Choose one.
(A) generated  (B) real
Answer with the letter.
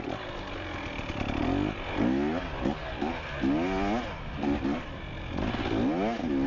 B